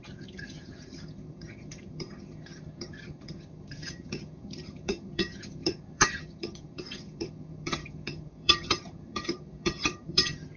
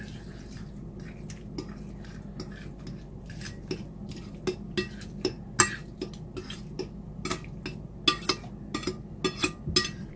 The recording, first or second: second